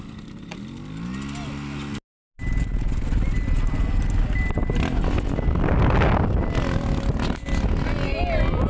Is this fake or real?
real